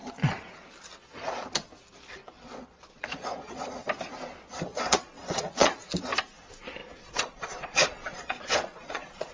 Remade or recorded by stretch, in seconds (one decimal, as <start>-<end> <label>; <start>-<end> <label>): 0.0-2.2 recorded; 2.2-3.7 remade; 3.7-4.7 recorded; 4.7-5.7 remade; 5.7-6.8 recorded; 6.8-9.3 remade